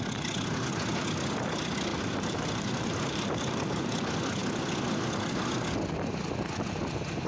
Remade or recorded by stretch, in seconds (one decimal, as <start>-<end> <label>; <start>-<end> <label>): 0.0-1.9 recorded; 1.9-4.0 remade; 4.0-7.3 recorded